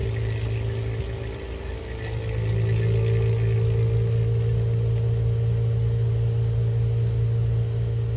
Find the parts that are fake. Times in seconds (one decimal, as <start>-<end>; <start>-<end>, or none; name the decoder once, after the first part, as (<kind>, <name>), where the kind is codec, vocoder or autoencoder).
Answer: none